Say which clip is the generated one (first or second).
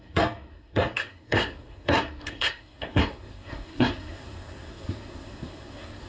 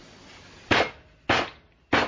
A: first